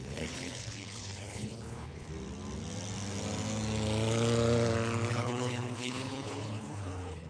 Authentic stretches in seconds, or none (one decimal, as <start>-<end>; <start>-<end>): 2.1-5.1